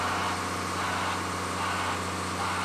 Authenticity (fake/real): real